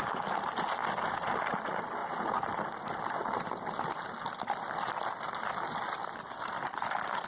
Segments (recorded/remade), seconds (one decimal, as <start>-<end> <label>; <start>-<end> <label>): 0.0-7.3 recorded